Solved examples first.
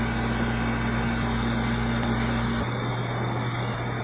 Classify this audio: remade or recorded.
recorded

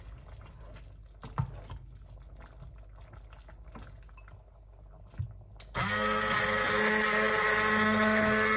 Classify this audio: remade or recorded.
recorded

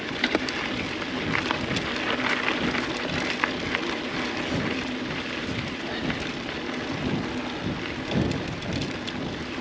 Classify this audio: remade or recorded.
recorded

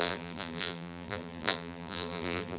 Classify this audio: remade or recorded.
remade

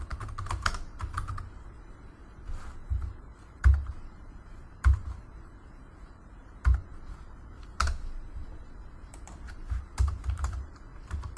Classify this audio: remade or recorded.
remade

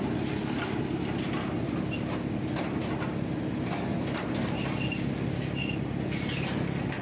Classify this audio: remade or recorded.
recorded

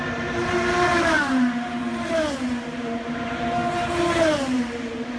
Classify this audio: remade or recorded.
remade